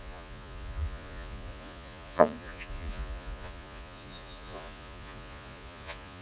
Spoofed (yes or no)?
yes